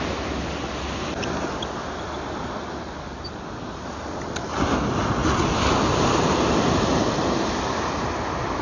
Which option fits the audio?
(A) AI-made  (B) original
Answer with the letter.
B